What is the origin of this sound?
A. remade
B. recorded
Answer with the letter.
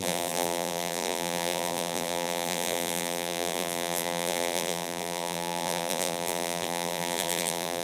A